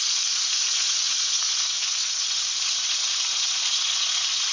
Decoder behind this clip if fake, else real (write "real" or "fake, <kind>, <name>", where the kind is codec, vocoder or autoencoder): fake, vocoder, Vocos